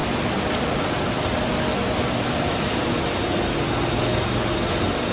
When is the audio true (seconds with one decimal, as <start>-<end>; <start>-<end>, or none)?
0.0-5.1